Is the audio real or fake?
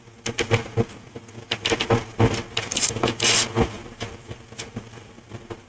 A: fake